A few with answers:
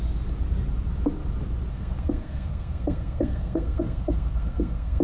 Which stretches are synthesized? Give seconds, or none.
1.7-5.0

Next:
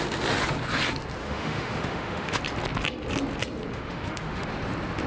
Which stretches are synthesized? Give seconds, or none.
1.2-2.4; 3.7-4.5